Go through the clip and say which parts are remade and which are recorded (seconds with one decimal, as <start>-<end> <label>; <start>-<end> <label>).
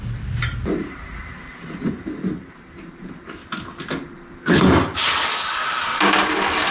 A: 0.0-1.4 remade; 1.4-1.9 recorded; 1.9-3.4 remade; 3.4-6.7 recorded